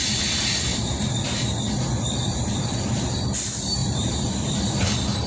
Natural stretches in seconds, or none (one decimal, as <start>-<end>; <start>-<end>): 0.0-3.8; 4.8-5.3